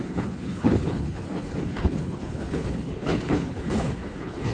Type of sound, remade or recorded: remade